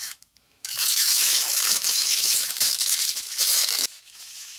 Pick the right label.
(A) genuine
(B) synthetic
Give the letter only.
B